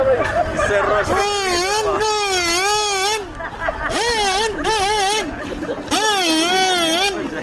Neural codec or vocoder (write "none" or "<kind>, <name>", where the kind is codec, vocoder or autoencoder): none